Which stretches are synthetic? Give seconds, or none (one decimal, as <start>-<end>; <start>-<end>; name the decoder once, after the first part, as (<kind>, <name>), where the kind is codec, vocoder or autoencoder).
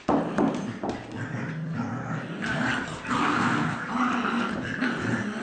3.2-3.9 (codec, SNAC)